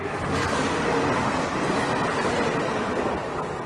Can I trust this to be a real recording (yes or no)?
yes